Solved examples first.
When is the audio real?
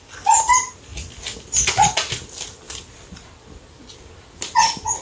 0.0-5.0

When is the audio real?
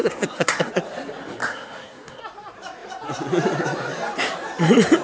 0.7-1.4; 2.2-5.0